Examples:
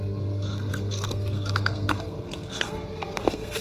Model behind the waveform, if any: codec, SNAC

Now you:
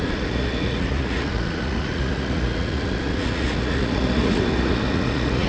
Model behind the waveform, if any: vocoder, Vocos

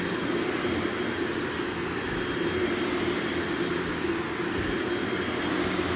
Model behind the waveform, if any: none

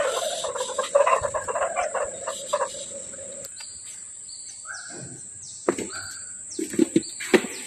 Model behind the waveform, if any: none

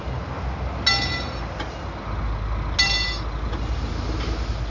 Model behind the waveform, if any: none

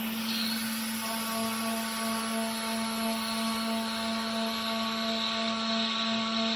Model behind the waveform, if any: none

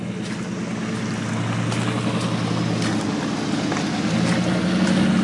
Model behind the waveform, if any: none